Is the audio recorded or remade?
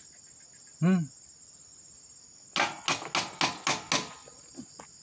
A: recorded